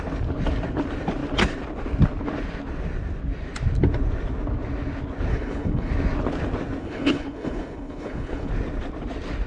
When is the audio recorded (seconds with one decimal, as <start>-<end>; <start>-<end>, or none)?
0.0-5.3; 5.9-6.8; 8.5-9.5